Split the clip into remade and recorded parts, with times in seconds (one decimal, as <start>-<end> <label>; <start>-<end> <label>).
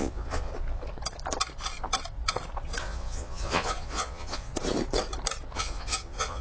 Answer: 0.0-0.5 remade; 0.5-2.8 recorded; 2.8-4.5 remade; 4.5-5.6 recorded; 5.6-6.4 remade